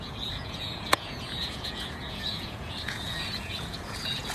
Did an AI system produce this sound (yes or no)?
yes